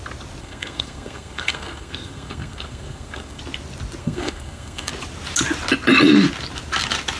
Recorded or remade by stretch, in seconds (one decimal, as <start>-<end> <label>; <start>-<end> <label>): 0.0-0.4 recorded; 0.4-3.4 remade; 3.4-4.0 recorded; 4.0-4.9 remade; 4.9-7.2 recorded